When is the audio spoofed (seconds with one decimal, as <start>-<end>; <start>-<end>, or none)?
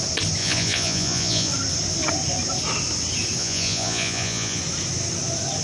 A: 0.4-1.5; 3.4-4.6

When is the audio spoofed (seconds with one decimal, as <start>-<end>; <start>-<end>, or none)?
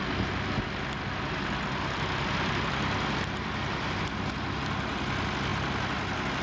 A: none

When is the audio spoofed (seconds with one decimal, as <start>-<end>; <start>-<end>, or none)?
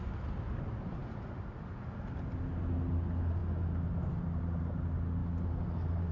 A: none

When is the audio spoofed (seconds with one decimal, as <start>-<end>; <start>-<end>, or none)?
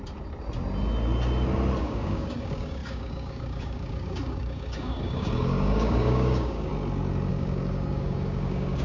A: 1.8-6.7; 7.3-8.8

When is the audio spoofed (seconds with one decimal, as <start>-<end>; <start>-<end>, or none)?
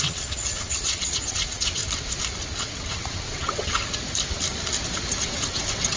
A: 0.0-1.8; 2.6-3.8; 5.2-6.0